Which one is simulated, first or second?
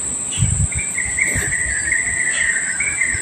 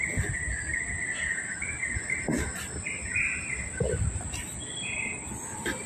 first